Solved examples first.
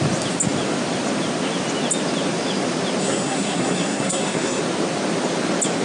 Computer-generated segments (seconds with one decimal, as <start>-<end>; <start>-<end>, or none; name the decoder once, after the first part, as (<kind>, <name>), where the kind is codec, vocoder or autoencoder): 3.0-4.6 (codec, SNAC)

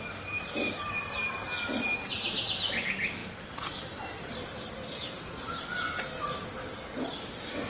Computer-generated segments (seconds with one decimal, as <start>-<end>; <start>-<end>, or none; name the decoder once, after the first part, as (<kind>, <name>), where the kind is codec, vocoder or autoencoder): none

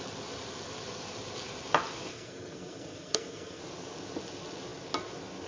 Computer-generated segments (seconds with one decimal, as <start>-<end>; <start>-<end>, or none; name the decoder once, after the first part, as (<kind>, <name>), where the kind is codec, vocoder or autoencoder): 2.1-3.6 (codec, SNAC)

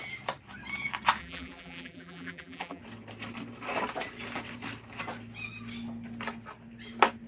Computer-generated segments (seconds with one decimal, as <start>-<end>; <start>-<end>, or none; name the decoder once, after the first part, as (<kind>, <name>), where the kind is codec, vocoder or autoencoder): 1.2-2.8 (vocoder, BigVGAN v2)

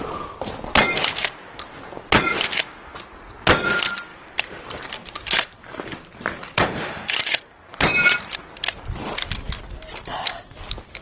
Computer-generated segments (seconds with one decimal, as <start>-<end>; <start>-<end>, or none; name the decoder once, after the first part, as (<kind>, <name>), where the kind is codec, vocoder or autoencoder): 4.1-8.4 (vocoder, BigVGAN v2)

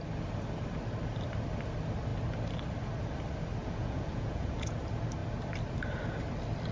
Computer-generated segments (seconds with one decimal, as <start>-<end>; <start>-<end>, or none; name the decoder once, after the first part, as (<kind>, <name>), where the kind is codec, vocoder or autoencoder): 3.6-4.5 (vocoder, Vocos)